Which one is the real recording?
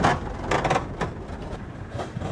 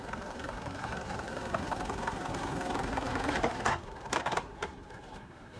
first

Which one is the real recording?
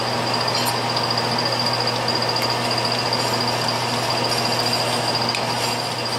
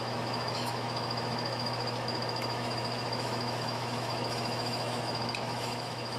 first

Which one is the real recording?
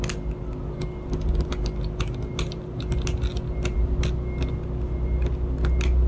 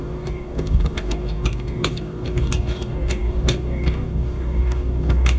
first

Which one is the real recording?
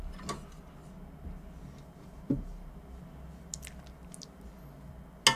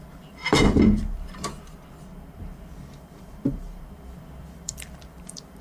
first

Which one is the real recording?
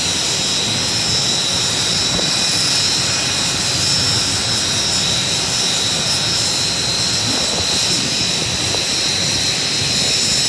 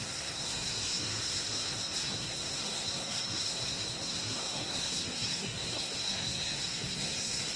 first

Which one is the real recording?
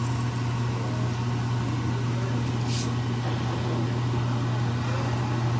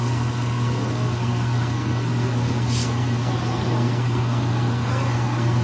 first